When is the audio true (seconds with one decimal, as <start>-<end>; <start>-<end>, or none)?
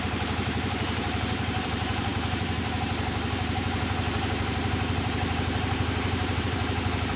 none